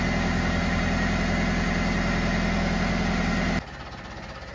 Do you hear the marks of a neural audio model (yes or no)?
no